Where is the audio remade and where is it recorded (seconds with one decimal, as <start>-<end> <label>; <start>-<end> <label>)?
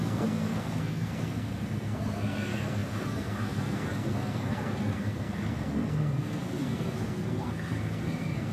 0.0-8.5 remade